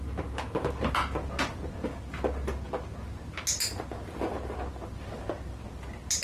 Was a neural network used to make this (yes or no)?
no